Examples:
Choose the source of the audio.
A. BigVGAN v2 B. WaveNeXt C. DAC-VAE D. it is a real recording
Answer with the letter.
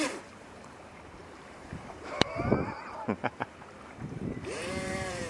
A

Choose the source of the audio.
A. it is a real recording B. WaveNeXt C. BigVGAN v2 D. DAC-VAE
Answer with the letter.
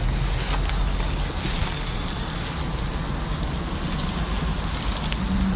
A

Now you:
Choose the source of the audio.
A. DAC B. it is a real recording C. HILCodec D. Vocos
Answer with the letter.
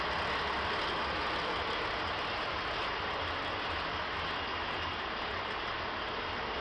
B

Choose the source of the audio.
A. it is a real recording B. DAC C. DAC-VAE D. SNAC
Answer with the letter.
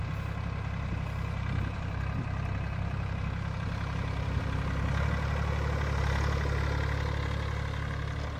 A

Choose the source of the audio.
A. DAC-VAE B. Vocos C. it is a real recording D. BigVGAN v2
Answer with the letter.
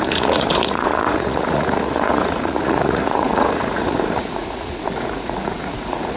B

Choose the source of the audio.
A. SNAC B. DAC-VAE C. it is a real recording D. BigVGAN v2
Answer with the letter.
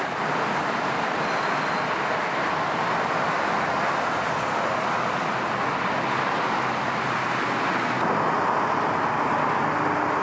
C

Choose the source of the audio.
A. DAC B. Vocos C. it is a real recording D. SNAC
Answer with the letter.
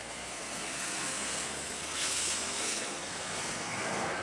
D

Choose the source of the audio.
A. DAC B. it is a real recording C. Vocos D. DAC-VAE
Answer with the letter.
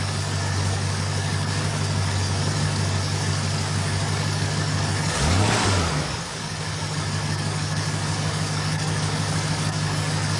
A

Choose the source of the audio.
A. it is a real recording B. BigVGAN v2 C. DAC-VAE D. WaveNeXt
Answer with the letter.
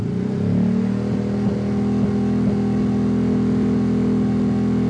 A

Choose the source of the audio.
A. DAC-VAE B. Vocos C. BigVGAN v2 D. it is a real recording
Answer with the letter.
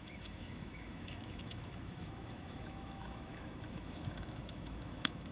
A